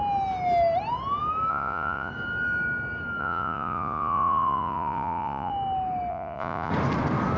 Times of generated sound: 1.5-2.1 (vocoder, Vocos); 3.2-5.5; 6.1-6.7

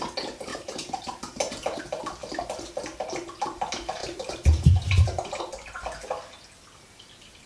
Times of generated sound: 0.5-1.8 (vocoder, BigVGAN v2); 4.0-5.4

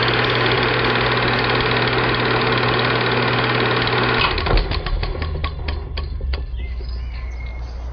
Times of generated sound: none

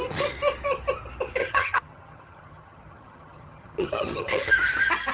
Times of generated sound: 1.4-4.5 (vocoder, HiFi-GAN)

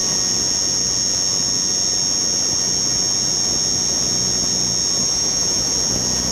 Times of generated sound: 5.0-5.7 (autoencoder, DAC-VAE)